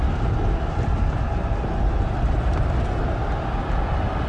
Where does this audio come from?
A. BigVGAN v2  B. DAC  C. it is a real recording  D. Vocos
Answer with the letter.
C